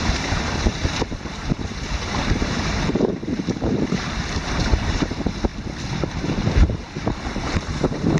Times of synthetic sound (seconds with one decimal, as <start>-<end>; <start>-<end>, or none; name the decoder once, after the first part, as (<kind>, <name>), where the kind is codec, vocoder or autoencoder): 0.0-5.5 (vocoder, BigVGAN v2); 6.4-8.2